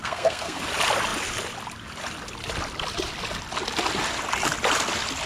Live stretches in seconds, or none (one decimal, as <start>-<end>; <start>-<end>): 0.6-5.3